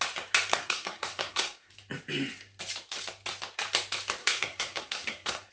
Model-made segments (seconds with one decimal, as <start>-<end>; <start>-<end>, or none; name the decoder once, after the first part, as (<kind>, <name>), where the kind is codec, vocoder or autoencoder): 0.5-1.7 (codec, SNAC); 4.2-5.5